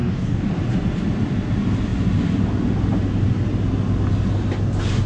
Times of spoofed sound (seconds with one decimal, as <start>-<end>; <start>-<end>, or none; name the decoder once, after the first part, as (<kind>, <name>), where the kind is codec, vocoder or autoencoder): 0.0-0.5 (codec, DAC)